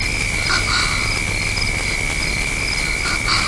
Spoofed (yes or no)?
no